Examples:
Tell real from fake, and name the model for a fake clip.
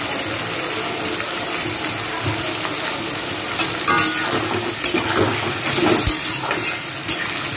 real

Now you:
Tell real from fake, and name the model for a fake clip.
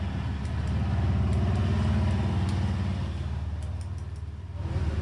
real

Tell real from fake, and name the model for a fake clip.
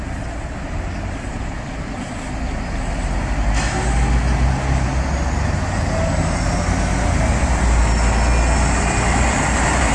real